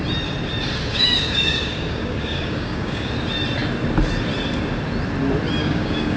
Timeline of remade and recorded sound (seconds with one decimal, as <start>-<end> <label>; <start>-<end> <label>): 0.0-0.9 recorded; 0.9-3.1 remade; 3.1-5.6 recorded; 5.6-6.2 remade